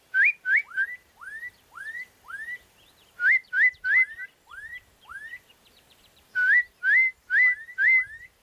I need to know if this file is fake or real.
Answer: fake